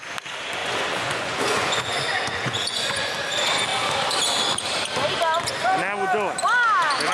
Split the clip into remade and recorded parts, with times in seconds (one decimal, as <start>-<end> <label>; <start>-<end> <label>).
0.0-0.6 recorded; 0.6-3.1 remade; 3.1-7.1 recorded